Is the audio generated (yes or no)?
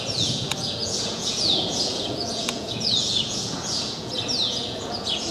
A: yes